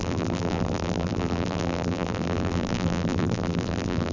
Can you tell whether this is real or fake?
fake